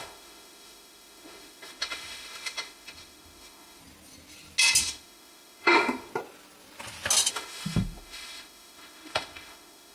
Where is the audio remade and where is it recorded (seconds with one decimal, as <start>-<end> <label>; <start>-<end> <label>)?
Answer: 0.0-3.8 remade; 3.8-4.8 recorded; 4.8-6.1 remade; 6.1-7.3 recorded; 7.3-9.9 remade